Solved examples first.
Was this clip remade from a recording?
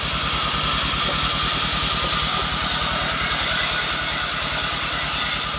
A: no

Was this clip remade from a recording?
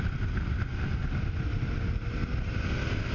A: no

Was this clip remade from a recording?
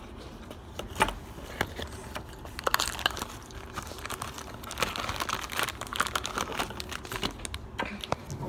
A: no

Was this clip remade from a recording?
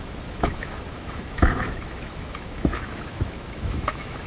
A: yes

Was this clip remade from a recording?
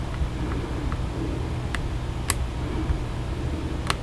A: no